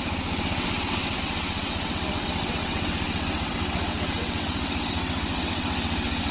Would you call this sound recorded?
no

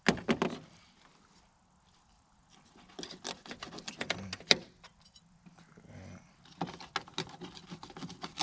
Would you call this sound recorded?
yes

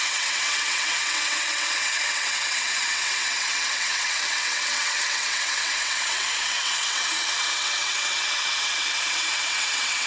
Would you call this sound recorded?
no